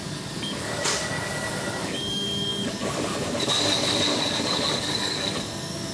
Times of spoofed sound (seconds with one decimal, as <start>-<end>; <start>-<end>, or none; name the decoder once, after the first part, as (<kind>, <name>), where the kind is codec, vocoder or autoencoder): 0.0-5.9 (codec, DAC)